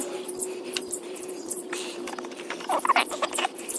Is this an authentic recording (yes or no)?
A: no